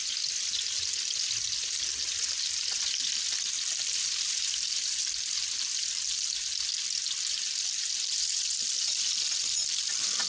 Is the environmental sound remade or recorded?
recorded